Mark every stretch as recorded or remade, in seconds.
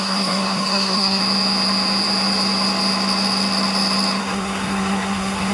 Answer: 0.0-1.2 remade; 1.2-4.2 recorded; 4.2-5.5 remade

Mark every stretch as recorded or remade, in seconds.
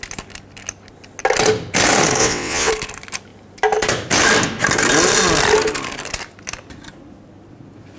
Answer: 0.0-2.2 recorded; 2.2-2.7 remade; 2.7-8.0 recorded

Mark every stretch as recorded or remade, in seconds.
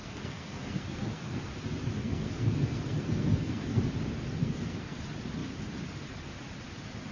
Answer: 0.0-1.5 remade; 1.5-2.0 recorded; 2.0-3.8 remade; 3.8-4.4 recorded; 4.4-5.0 remade; 5.0-7.1 recorded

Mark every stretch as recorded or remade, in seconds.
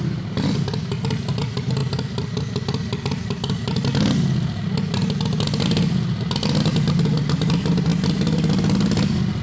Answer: 0.0-9.4 recorded